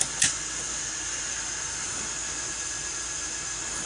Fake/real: real